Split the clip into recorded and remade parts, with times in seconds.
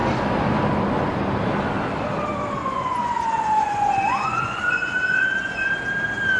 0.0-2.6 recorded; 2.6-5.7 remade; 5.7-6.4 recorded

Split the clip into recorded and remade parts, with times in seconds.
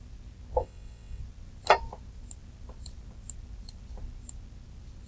0.0-0.6 recorded; 0.6-1.2 remade; 1.2-5.1 recorded